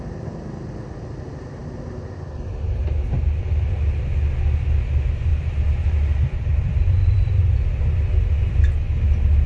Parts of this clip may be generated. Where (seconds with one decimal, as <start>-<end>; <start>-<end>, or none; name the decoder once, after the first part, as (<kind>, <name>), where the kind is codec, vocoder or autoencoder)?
5.3-7.8 (vocoder, BigVGAN v2)